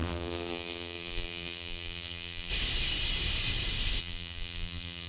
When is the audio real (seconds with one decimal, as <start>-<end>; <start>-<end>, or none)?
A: 2.5-4.0